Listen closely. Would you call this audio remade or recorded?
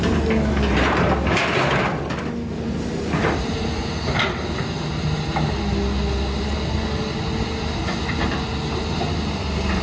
recorded